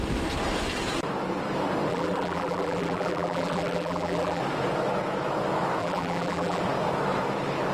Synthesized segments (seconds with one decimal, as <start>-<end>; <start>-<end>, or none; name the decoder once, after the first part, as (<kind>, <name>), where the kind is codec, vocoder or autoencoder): 1.9-4.4 (vocoder, BigVGAN v2); 5.8-6.6